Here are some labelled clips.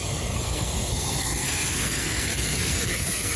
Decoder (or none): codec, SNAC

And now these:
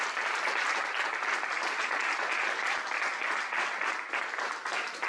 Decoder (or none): none